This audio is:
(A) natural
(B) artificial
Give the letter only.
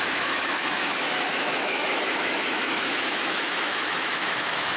B